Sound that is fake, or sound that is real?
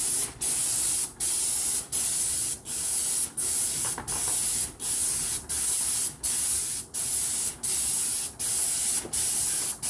real